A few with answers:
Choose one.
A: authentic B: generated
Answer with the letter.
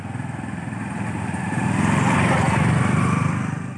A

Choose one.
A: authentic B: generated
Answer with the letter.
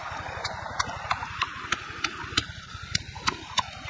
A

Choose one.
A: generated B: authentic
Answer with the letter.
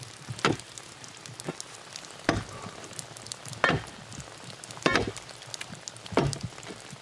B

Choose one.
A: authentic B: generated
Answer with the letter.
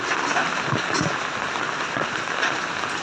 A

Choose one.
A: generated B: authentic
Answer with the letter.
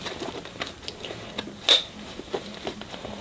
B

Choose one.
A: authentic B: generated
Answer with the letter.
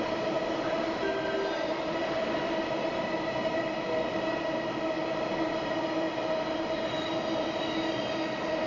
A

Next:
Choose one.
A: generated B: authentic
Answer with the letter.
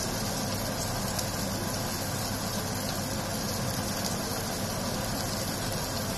B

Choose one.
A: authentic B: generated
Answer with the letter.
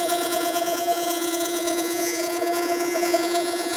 B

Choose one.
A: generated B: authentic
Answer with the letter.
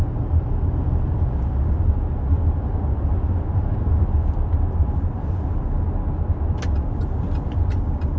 B